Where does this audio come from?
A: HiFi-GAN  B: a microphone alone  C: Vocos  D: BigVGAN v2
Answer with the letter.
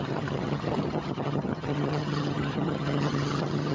A